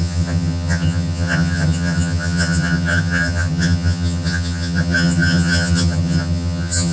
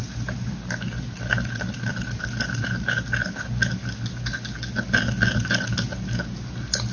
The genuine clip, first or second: second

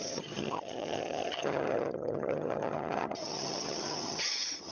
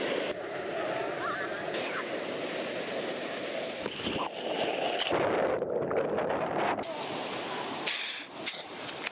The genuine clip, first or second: second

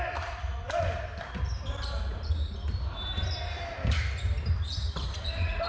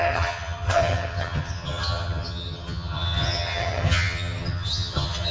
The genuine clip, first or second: first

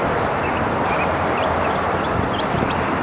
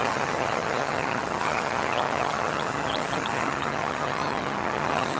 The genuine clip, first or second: first